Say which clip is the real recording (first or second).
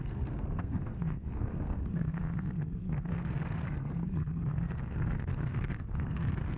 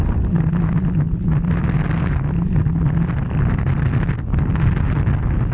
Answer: second